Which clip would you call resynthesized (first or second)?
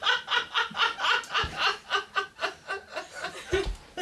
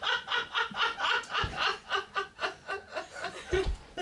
second